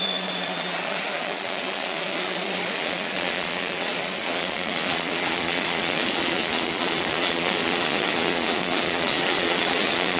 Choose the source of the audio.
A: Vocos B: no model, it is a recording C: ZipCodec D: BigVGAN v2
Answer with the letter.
A